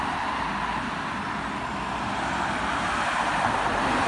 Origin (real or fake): real